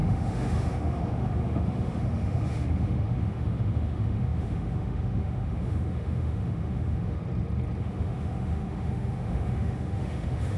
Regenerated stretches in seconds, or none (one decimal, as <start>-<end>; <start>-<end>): 0.0-7.2; 7.8-10.6